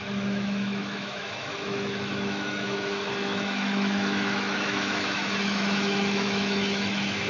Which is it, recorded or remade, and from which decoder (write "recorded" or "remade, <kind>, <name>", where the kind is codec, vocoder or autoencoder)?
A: remade, autoencoder, DAC-VAE